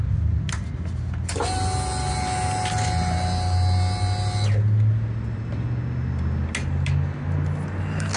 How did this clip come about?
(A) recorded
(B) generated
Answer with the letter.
A